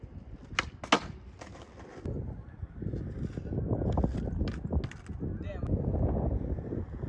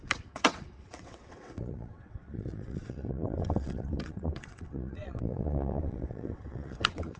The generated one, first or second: second